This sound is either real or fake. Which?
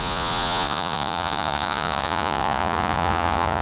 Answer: fake